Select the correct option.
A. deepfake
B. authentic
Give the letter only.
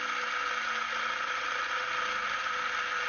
B